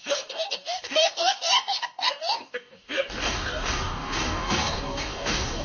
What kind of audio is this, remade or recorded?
remade